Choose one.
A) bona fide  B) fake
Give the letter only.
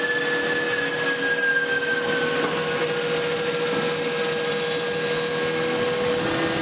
A